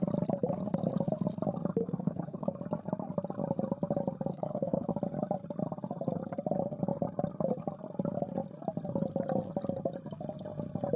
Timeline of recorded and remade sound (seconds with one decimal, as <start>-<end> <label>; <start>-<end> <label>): 0.0-1.8 recorded; 1.8-2.5 remade; 2.5-4.3 recorded; 4.3-4.9 remade; 4.9-11.0 recorded